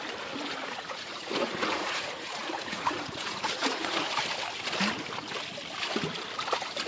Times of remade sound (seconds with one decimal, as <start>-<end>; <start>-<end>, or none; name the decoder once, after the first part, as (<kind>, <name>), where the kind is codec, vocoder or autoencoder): 0.6-4.1 (vocoder, Vocos)